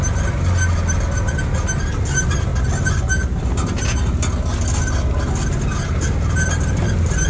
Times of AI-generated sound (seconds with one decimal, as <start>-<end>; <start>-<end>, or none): none